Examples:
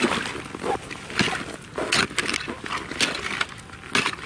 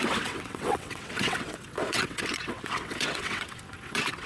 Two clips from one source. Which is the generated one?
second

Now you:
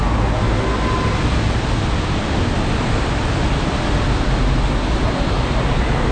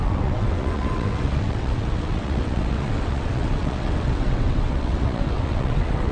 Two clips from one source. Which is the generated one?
second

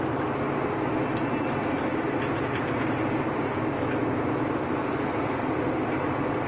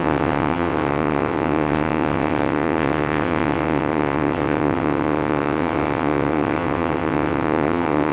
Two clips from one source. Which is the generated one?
second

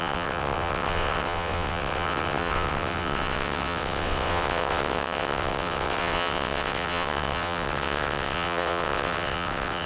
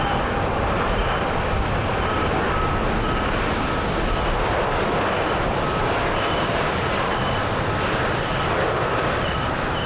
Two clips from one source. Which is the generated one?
first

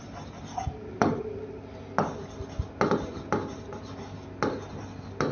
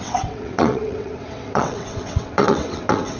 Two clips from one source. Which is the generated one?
second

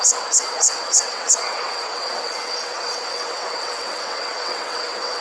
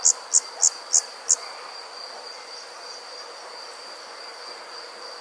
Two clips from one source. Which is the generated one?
first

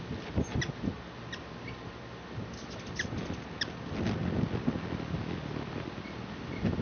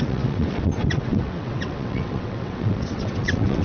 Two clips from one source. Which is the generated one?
second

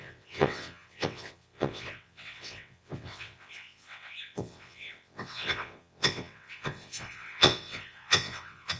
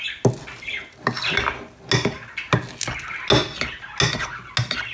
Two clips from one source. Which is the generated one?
first